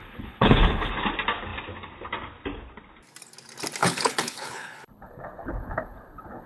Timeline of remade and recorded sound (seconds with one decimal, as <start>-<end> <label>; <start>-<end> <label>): 0.0-0.9 remade; 0.9-3.8 recorded; 3.8-6.5 remade